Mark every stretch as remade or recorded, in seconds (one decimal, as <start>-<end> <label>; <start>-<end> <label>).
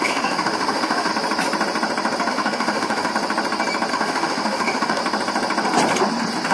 0.0-1.1 remade; 1.1-2.3 recorded; 2.3-3.1 remade; 3.1-3.9 recorded; 3.9-5.0 remade; 5.0-6.5 recorded